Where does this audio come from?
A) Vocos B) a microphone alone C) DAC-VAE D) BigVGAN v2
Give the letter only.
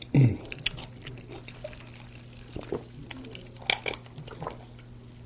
B